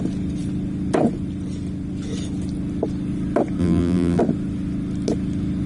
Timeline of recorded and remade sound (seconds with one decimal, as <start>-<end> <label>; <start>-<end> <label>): 0.0-3.6 recorded; 3.6-4.2 remade; 4.2-5.7 recorded